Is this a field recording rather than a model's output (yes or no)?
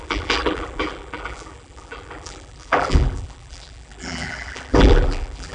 no